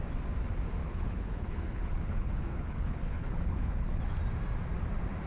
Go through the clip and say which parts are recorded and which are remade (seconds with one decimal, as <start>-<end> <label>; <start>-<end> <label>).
0.0-0.8 recorded; 0.8-4.0 remade; 4.0-5.3 recorded